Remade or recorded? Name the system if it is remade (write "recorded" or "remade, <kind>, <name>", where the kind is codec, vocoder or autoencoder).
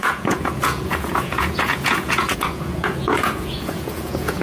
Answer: remade, vocoder, Vocos